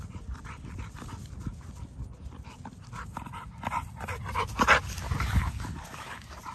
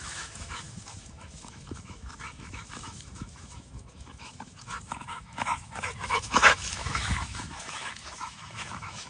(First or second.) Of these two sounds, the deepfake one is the second